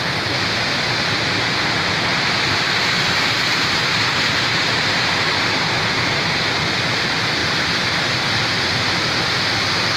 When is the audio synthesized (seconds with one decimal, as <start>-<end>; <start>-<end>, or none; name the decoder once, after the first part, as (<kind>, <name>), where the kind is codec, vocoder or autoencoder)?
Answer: 7.4-8.2 (vocoder, BigVGAN v2)